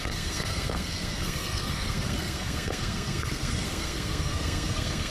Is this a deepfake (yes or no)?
yes